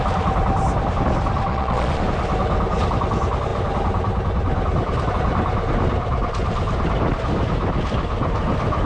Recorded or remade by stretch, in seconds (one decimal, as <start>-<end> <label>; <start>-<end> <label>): 0.0-1.5 recorded; 1.5-2.0 remade; 2.0-8.9 recorded